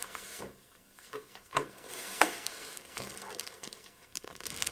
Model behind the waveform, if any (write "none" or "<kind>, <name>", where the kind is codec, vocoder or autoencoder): codec, SNAC